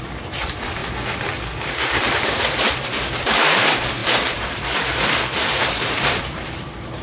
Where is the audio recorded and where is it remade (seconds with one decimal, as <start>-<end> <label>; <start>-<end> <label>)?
0.0-0.8 remade; 0.8-1.6 recorded; 1.6-7.0 remade